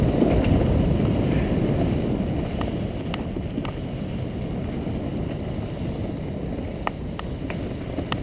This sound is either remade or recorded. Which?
recorded